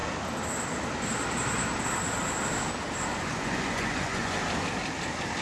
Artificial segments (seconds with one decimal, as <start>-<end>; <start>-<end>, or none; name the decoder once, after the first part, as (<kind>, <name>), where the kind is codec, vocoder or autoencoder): 3.1-4.4 (vocoder, Vocos)